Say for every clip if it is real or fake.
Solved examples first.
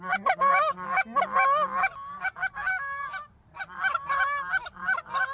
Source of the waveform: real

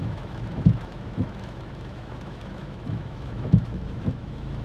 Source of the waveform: fake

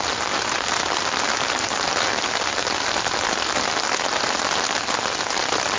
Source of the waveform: real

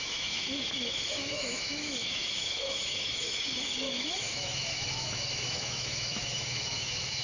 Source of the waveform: fake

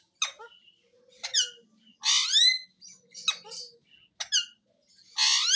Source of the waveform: real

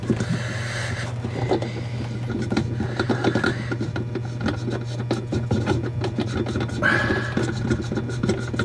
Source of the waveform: real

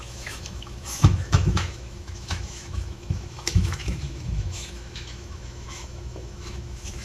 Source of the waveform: fake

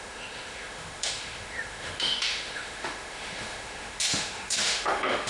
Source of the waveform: fake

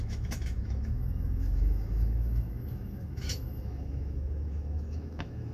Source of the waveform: fake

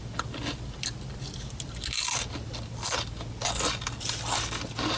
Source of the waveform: real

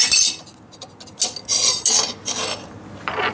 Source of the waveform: real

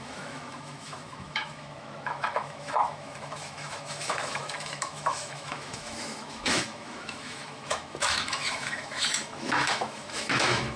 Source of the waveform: fake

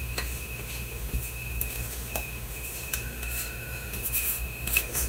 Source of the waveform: fake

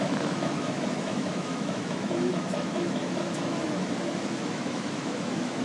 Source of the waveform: fake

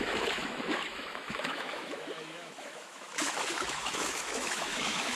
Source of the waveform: fake